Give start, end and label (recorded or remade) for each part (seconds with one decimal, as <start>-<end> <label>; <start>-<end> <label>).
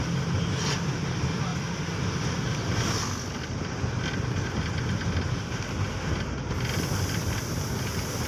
0.0-8.3 recorded